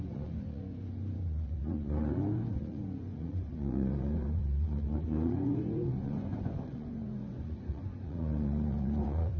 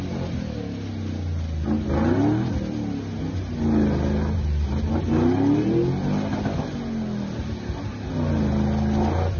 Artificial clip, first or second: first